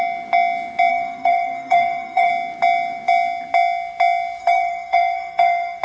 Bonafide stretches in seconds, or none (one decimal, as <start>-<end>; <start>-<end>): 0.0-0.9; 2.3-4.4